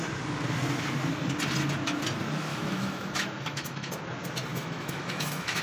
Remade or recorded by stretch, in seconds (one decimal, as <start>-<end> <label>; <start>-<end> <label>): 0.0-2.5 recorded; 2.5-3.9 remade; 3.9-4.5 recorded; 4.5-5.6 remade